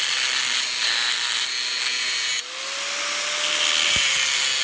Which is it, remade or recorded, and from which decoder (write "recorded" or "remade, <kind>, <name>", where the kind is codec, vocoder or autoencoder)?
recorded